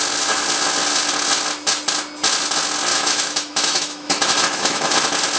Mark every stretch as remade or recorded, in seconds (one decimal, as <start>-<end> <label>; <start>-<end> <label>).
0.0-2.9 recorded; 2.9-4.9 remade; 4.9-5.4 recorded